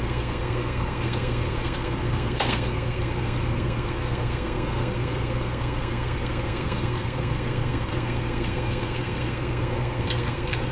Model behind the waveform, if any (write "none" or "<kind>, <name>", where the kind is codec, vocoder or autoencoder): codec, SNAC